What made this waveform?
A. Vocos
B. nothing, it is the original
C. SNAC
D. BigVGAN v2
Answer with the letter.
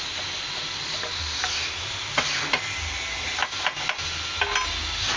B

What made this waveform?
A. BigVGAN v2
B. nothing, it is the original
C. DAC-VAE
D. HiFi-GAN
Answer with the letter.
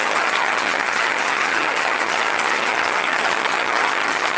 D